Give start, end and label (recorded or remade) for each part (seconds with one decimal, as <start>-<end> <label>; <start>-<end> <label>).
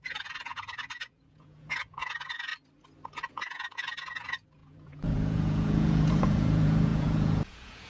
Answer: 0.0-2.5 remade; 2.5-3.3 recorded; 3.3-7.9 remade